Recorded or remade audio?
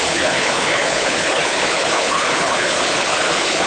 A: remade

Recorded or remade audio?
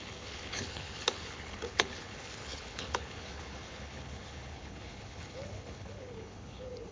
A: remade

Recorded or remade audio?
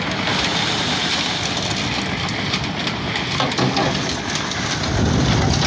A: recorded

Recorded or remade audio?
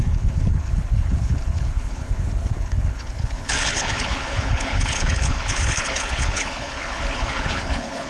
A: remade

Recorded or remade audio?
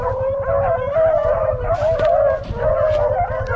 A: recorded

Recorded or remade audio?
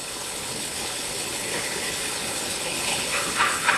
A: remade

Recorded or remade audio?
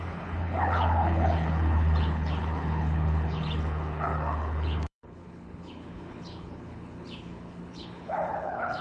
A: remade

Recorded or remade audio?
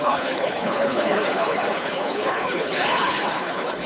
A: remade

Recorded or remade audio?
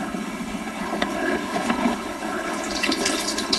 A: remade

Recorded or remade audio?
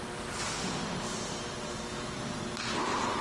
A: recorded